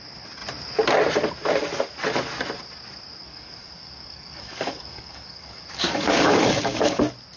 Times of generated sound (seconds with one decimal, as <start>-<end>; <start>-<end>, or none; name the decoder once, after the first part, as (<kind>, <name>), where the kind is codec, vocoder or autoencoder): 3.2-7.0 (codec, DAC)